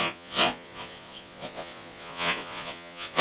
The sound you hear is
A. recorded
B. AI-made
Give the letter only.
B